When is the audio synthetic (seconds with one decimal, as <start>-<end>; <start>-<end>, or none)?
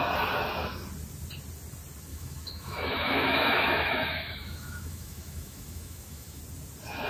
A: 2.1-6.4